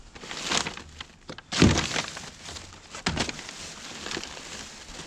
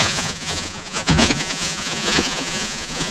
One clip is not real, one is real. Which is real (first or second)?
first